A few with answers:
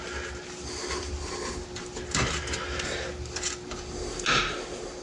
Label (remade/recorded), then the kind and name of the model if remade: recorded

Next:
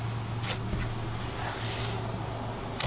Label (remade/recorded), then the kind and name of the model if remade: recorded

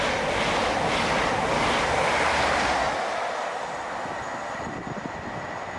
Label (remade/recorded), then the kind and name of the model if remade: recorded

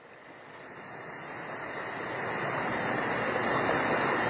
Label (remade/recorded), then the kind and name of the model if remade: recorded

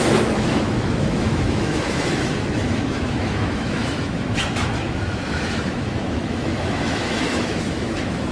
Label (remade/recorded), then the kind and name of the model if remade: remade, autoencoder, DAC-VAE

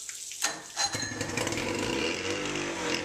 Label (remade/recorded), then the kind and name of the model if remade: recorded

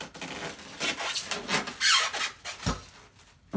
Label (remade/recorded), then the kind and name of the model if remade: recorded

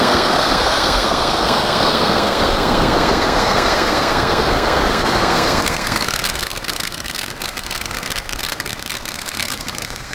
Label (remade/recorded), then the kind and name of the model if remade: remade, codec, SNAC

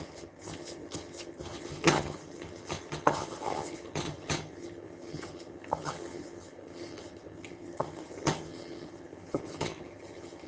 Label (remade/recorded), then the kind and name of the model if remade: remade, vocoder, HiFi-GAN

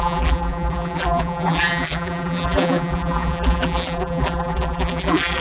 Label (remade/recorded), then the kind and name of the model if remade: remade, vocoder, BigVGAN v2